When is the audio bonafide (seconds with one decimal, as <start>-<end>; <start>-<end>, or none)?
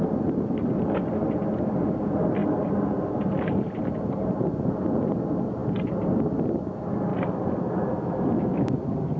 0.0-9.2